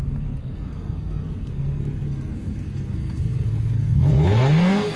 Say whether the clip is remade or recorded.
remade